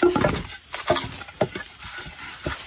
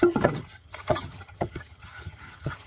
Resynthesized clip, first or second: second